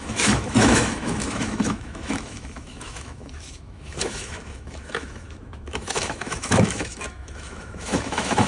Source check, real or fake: fake